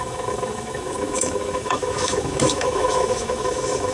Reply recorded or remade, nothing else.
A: remade